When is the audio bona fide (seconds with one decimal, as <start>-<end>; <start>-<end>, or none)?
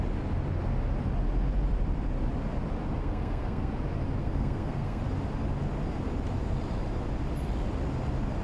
0.0-3.0; 3.7-4.2; 5.0-8.4